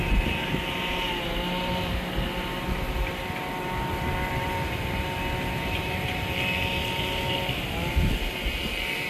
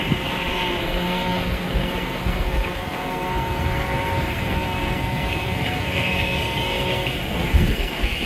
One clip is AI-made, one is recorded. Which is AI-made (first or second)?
second